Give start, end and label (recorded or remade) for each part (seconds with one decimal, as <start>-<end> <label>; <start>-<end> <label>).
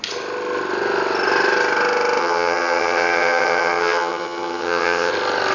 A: 0.0-2.2 recorded; 2.2-5.1 remade; 5.1-5.5 recorded